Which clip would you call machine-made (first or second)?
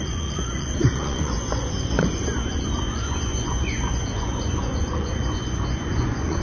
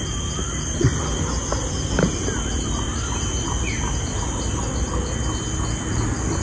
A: first